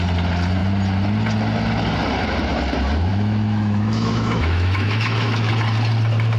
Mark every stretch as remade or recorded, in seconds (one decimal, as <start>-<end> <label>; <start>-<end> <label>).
0.0-3.1 recorded; 3.1-5.5 remade; 5.5-6.4 recorded